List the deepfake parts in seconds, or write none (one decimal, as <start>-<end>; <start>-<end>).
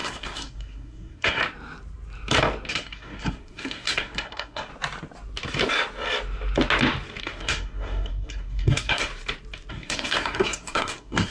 0.0-1.4; 2.7-4.7; 7.2-9.1; 9.7-11.3